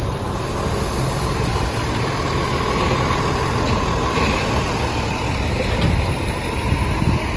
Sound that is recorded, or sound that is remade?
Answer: recorded